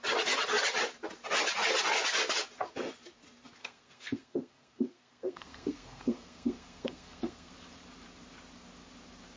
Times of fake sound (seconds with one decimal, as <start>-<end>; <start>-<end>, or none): 3.6-7.5